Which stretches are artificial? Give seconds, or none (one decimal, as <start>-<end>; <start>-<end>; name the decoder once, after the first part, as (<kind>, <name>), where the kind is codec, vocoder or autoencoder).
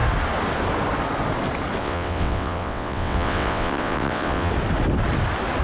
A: 1.8-4.5 (vocoder, WaveNeXt)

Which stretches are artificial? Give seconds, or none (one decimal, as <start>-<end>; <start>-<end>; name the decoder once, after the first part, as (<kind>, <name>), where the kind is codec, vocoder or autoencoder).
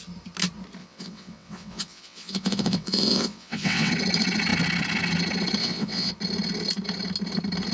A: 0.8-3.9 (vocoder, WaveNeXt); 5.6-6.1